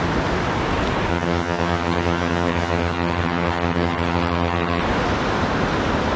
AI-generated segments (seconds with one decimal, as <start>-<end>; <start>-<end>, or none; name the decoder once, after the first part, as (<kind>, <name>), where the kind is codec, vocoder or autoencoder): 1.1-4.8 (vocoder, HiFi-GAN)